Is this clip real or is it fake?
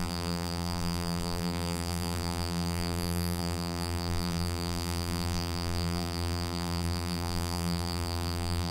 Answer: fake